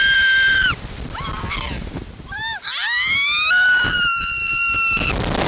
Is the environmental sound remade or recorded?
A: remade